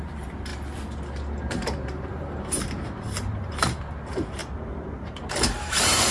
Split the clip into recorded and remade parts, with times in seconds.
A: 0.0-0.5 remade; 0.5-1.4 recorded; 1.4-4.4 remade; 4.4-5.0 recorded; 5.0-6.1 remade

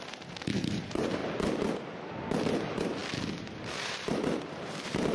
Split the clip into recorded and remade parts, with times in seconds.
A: 0.0-1.2 remade; 1.2-2.6 recorded; 2.6-3.0 remade; 3.0-3.7 recorded; 3.7-5.1 remade